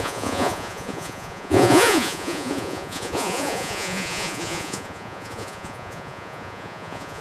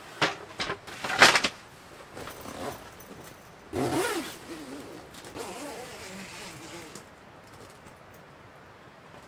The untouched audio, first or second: second